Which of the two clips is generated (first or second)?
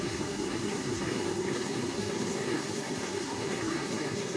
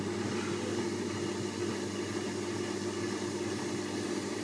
first